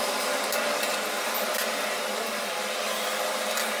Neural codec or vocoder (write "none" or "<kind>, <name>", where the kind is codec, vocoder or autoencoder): none